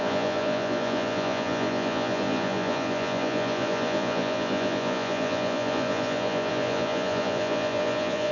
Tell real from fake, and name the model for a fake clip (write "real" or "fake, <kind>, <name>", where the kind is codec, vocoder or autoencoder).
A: fake, vocoder, Vocos